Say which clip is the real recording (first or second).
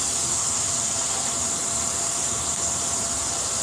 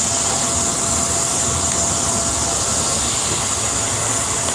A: second